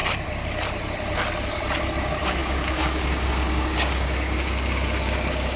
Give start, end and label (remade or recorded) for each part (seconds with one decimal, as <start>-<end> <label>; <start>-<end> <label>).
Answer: 0.0-2.0 recorded; 2.0-5.6 remade